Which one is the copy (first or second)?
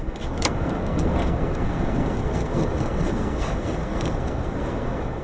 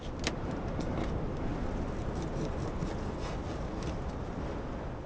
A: first